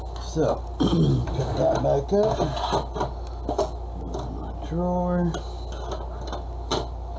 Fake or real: real